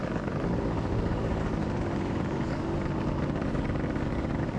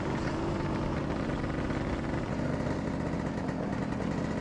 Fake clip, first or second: first